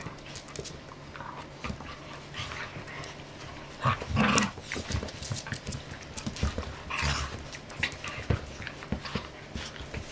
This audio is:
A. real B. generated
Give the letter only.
A